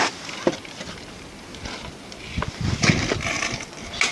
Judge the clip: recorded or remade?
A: recorded